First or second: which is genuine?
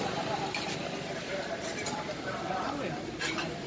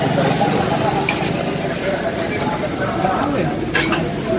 second